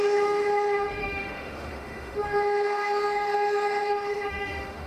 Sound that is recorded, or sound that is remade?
remade